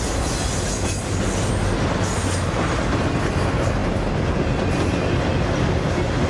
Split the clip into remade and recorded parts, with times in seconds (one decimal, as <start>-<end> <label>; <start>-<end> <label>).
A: 0.0-6.3 recorded